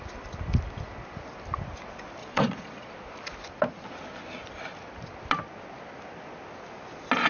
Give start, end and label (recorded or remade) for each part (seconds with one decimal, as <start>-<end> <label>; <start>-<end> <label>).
0.0-2.2 recorded; 2.2-2.9 remade; 2.9-7.3 recorded